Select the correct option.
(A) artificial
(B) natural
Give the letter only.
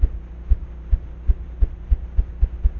B